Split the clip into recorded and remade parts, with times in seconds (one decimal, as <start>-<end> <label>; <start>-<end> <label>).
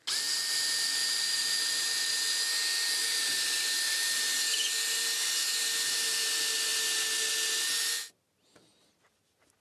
0.0-1.0 recorded; 1.0-2.1 remade; 2.1-3.0 recorded; 3.0-4.2 remade; 4.2-9.6 recorded